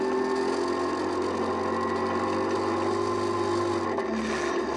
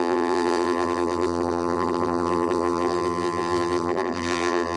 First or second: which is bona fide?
first